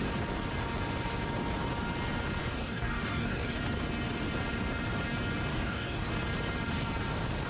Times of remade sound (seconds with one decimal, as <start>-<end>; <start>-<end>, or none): 2.4-3.6; 5.5-6.1